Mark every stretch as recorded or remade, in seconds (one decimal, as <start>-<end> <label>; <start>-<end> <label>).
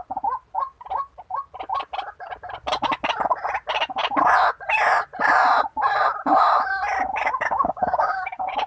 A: 0.0-7.2 recorded; 7.2-8.7 remade